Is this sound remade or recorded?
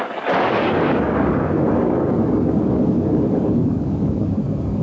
remade